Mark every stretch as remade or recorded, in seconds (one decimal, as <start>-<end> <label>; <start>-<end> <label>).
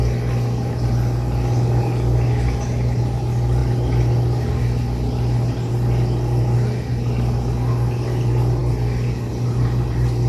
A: 0.0-10.3 recorded